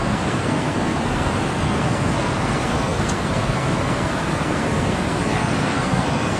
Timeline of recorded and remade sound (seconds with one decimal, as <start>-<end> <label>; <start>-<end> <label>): 0.0-6.4 remade